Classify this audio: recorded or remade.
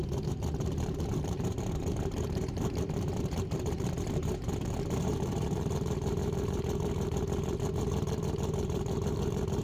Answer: remade